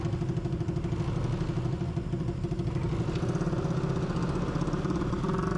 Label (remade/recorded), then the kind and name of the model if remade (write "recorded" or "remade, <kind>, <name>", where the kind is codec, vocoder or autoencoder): recorded